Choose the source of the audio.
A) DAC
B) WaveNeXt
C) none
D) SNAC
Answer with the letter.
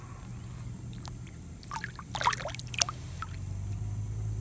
C